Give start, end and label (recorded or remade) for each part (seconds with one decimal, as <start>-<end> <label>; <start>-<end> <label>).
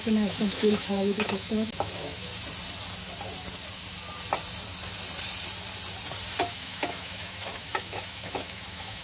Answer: 0.0-2.3 remade; 2.3-6.5 recorded; 6.5-9.0 remade